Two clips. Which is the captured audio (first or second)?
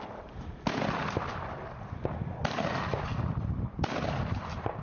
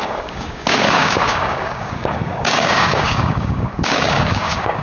first